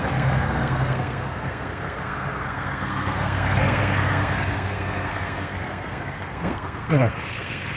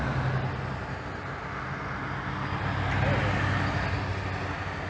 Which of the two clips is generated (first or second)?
first